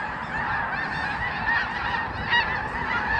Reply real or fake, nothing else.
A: real